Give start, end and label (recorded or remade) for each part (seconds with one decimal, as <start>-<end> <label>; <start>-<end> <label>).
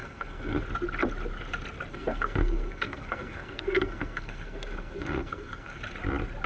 0.0-0.6 remade; 0.6-1.9 recorded; 1.9-5.8 remade; 5.8-6.5 recorded